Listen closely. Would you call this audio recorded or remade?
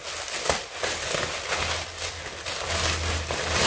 recorded